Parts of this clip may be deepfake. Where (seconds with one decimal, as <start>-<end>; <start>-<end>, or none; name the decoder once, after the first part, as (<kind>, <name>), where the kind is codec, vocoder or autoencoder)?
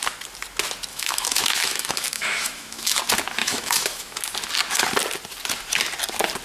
0.9-3.0 (autoencoder, DAC-VAE); 3.4-4.2